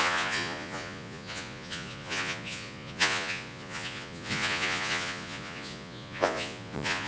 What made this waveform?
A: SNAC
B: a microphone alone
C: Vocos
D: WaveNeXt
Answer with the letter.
C